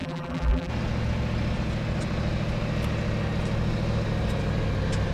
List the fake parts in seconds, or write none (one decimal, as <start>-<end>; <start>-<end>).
0.0-0.7